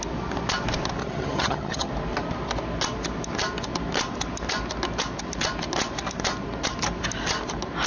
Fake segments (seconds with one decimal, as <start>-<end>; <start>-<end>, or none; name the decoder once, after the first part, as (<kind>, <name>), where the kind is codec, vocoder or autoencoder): 1.0-1.9 (vocoder, HiFi-GAN)